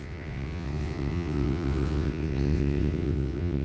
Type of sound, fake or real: fake